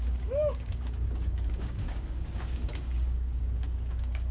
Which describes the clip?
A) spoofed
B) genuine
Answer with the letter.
A